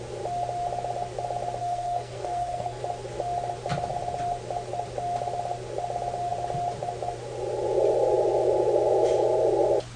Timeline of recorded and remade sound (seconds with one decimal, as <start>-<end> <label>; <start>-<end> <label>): 0.0-1.6 recorded; 1.6-2.8 remade; 2.8-10.0 recorded